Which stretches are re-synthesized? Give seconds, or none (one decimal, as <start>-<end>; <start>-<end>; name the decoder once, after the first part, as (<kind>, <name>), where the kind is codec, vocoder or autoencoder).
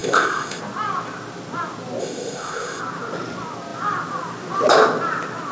0.0-0.6 (codec, ZipCodec); 2.0-2.8